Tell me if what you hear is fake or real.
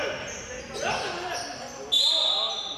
real